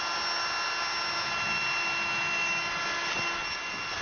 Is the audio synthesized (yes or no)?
no